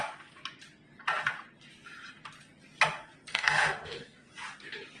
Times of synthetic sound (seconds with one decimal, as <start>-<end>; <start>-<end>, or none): 3.3-4.3